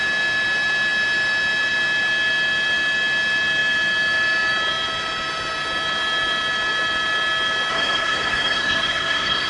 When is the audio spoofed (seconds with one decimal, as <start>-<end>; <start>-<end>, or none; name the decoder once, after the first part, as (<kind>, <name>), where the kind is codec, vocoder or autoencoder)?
7.7-9.5 (codec, SNAC)